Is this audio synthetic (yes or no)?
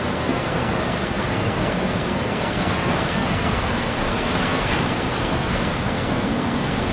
yes